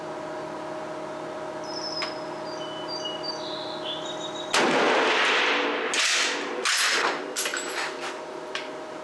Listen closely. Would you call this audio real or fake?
real